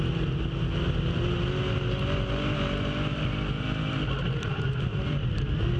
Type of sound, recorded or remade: recorded